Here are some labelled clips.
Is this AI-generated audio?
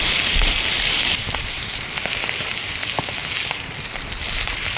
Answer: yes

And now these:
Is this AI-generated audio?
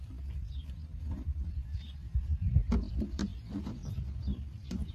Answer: yes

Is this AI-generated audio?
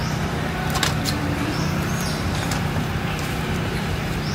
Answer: yes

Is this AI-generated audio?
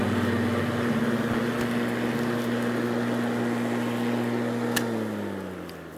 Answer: no